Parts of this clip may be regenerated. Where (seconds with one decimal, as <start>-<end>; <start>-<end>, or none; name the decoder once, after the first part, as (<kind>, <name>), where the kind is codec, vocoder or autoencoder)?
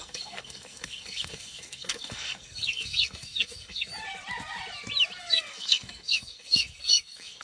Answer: 0.0-3.9 (codec, SNAC); 5.2-7.4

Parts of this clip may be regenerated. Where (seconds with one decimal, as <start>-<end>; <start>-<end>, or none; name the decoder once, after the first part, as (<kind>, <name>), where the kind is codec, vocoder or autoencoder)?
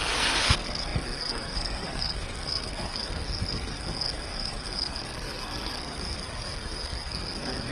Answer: 0.0-7.7 (codec, SNAC)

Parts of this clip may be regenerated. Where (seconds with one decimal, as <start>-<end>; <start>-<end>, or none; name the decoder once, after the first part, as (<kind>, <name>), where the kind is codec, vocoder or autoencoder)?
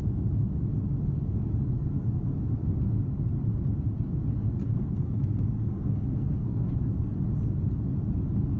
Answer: 4.6-6.7 (codec, SNAC)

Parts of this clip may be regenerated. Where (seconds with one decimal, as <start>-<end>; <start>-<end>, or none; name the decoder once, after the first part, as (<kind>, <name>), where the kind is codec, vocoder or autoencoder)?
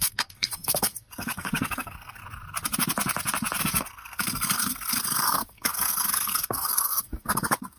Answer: 0.0-2.2 (codec, SNAC); 3.6-7.8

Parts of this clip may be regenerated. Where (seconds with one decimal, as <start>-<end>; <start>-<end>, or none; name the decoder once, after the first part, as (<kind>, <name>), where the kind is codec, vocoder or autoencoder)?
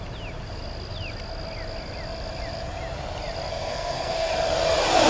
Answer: 3.5-4.3 (codec, SNAC)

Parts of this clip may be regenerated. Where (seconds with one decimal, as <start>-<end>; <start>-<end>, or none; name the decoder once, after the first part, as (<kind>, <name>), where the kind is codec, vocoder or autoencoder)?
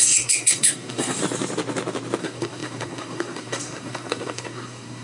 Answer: 0.0-1.2 (codec, SNAC); 2.2-5.0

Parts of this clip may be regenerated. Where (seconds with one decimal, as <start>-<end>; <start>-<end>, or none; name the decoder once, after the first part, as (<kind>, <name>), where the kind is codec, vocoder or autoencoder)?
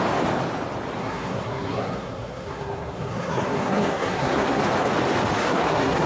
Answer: 1.0-4.6 (codec, SNAC); 5.4-6.1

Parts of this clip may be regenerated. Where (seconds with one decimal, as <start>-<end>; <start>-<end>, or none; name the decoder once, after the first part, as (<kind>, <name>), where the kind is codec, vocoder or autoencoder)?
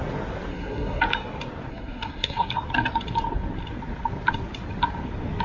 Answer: 0.5-1.0 (codec, SNAC); 1.7-2.5